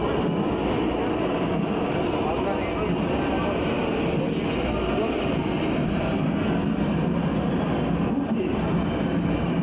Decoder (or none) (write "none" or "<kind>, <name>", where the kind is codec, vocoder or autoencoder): none